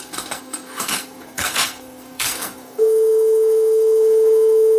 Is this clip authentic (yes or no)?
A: no